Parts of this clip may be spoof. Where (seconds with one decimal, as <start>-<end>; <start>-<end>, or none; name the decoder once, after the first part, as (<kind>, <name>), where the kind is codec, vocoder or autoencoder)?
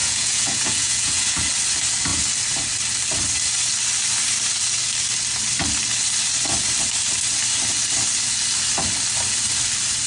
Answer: 0.0-1.4 (vocoder, Vocos)